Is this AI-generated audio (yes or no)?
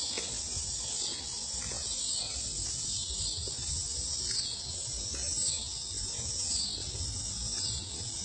no